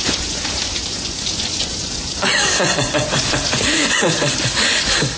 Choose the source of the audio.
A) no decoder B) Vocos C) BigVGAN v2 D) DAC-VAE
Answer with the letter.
B